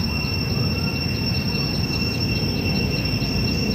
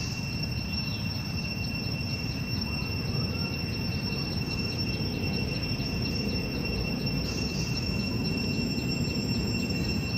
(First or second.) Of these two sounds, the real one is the first